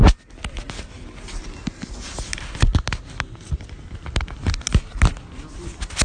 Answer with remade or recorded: recorded